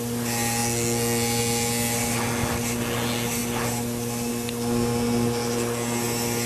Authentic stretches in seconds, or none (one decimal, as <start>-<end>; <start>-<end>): 0.0-6.5